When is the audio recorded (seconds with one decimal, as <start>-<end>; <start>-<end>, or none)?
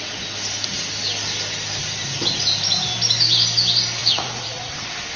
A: 0.0-4.0; 4.7-5.2